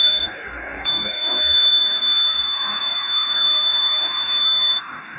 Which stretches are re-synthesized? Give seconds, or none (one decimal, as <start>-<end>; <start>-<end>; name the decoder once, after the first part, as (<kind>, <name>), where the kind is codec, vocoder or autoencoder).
0.0-5.2 (codec, DAC)